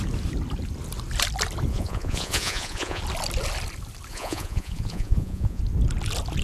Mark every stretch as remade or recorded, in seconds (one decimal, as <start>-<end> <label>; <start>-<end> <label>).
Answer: 0.0-1.7 recorded; 1.7-3.0 remade; 3.0-4.1 recorded; 4.1-5.6 remade; 5.6-6.4 recorded